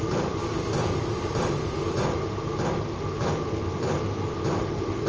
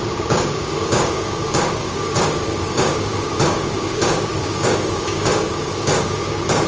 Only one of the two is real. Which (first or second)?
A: first